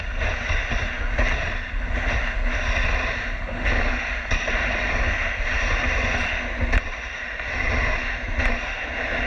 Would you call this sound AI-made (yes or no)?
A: no